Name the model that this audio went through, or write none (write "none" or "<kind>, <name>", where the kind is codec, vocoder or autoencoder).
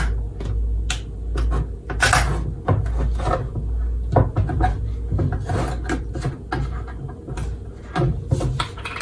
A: none